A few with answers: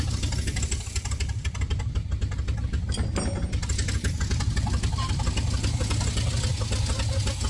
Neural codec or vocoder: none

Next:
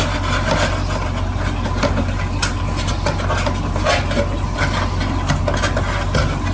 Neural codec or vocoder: none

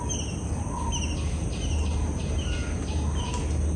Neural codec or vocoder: none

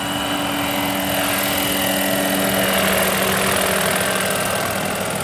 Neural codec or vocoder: none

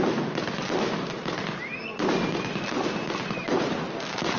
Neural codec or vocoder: none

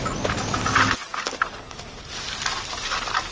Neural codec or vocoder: none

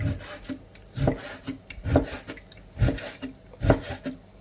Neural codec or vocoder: none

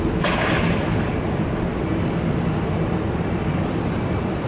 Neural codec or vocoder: none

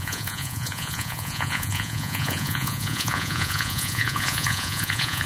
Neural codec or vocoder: vocoder, Vocos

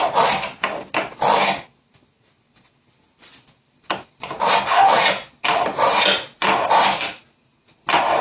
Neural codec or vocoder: none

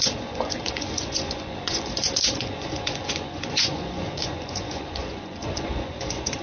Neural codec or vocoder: vocoder, Vocos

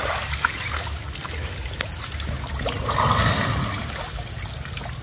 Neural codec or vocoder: none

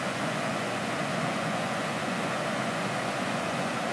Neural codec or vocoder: vocoder, Vocos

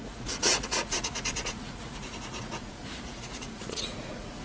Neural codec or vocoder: vocoder, Vocos